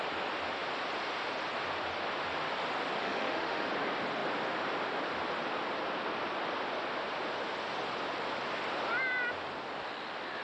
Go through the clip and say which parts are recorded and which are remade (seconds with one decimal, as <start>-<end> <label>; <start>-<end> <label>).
0.0-3.0 recorded; 3.0-3.7 remade; 3.7-10.4 recorded